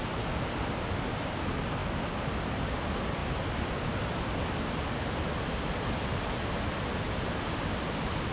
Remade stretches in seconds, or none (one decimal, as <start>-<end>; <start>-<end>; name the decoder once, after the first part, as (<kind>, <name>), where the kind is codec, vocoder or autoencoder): none